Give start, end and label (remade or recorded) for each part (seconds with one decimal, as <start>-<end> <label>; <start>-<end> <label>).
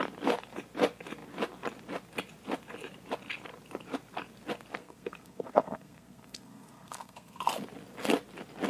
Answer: 0.0-4.8 recorded; 4.8-7.4 remade; 7.4-8.7 recorded